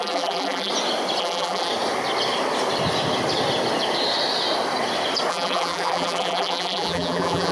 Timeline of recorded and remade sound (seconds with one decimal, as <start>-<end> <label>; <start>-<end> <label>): 0.0-0.7 remade; 0.7-1.2 recorded; 1.2-1.7 remade; 1.7-5.3 recorded; 5.3-7.5 remade